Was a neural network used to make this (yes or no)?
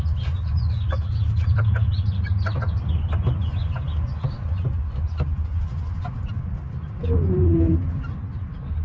no